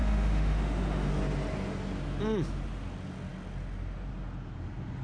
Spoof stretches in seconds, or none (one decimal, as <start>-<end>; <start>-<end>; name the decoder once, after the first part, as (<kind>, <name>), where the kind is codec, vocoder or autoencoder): 0.0-1.1 (autoencoder, DAC-VAE)